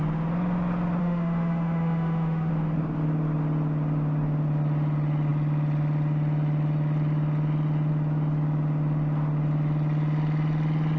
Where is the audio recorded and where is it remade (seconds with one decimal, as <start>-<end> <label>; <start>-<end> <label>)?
0.0-1.0 recorded; 1.0-2.5 remade; 2.5-11.0 recorded